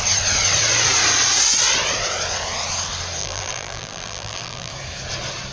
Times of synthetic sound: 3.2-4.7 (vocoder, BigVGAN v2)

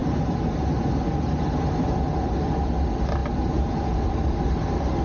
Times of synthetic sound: 0.0-1.1 (vocoder, BigVGAN v2); 3.2-4.4

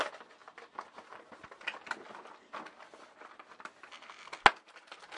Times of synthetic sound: none

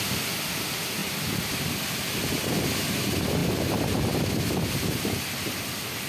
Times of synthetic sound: 0.0-6.1 (vocoder, BigVGAN v2)

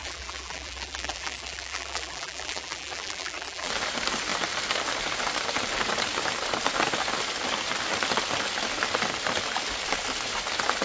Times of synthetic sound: 0.0-3.7 (vocoder, BigVGAN v2)

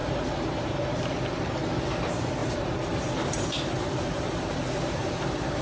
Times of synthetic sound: 0.0-0.8 (vocoder, BigVGAN v2); 2.4-5.6

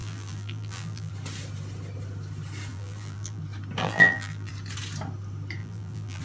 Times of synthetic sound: 0.0-1.1 (vocoder, BigVGAN v2); 2.7-3.4; 3.8-4.5; 5.6-6.2